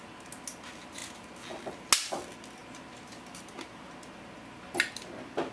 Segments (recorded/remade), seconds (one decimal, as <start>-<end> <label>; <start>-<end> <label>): 0.0-5.5 recorded